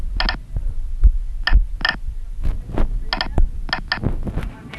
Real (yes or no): yes